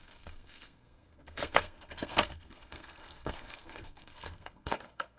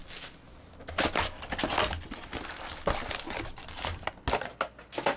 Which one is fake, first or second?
first